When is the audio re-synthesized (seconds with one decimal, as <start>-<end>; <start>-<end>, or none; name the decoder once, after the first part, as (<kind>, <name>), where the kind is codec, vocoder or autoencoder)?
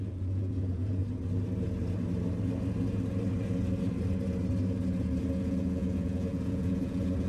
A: 0.0-1.0 (vocoder, Vocos); 5.4-7.3